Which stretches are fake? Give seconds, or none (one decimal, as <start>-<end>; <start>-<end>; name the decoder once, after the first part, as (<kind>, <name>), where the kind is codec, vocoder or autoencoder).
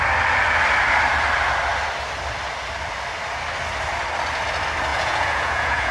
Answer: 4.9-5.9 (vocoder, Vocos)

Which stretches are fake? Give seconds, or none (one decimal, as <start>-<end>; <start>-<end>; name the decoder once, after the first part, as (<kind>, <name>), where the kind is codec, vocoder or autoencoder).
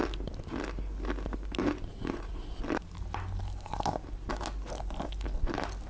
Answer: 1.9-2.5 (vocoder, Vocos)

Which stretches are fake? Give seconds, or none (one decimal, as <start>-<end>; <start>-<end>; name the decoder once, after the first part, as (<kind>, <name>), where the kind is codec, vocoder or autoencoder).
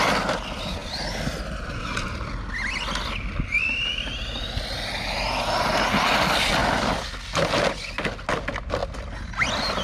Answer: none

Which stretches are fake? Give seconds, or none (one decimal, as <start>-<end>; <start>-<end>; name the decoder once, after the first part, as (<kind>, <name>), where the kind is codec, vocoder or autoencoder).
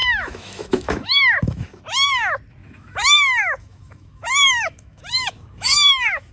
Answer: 0.0-1.8 (autoencoder, DAC-VAE); 2.6-6.3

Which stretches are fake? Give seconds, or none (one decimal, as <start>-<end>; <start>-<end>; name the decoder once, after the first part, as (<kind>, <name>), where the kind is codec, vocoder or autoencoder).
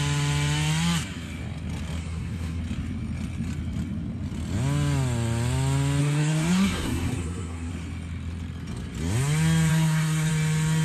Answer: 2.0-2.6 (codec, SNAC); 6.0-7.7; 9.7-10.3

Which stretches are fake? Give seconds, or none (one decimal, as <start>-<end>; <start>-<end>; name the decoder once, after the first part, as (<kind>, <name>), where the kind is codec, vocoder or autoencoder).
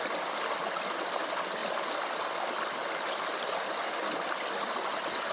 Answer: none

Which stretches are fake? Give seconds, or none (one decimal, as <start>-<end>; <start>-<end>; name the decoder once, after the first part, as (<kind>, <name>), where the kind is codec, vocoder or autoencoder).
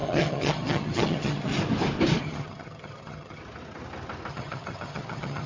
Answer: 0.0-1.5 (vocoder, HiFi-GAN); 2.2-3.4; 4.3-5.5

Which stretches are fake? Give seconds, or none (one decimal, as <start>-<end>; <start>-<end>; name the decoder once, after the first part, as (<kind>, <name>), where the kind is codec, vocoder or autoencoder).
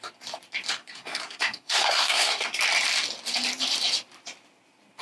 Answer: 0.8-2.6 (codec, SNAC)